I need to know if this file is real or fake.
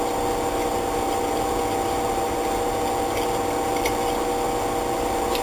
real